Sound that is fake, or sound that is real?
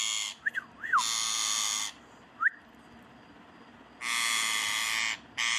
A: real